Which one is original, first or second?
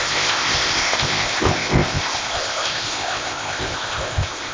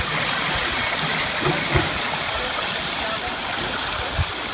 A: second